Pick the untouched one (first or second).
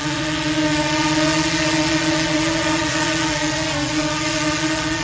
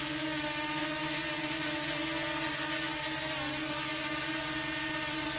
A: second